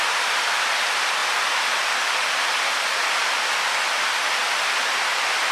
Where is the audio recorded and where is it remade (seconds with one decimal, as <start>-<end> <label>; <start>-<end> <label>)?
0.0-5.5 recorded